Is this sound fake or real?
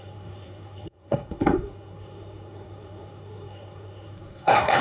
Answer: fake